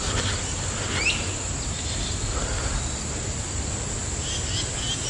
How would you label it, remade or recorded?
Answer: recorded